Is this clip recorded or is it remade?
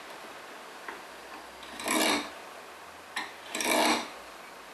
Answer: recorded